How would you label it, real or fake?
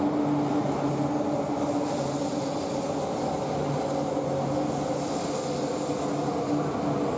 real